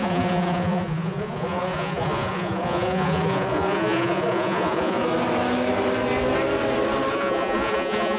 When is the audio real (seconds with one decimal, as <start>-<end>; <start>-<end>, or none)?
5.1-7.1